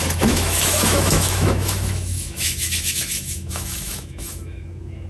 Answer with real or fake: fake